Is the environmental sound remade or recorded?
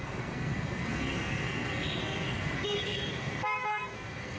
remade